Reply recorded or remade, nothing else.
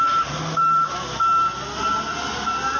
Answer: recorded